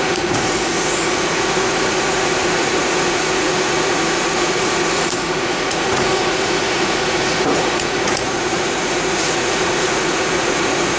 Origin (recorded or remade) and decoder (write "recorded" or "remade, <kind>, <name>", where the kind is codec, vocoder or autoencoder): remade, vocoder, Vocos